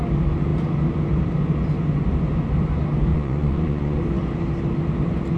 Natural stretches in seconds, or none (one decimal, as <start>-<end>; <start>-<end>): 0.0-3.1; 4.0-5.4